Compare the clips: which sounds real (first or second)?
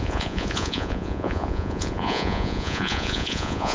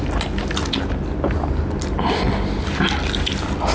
second